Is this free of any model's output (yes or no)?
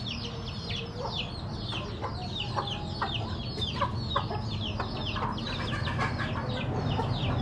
yes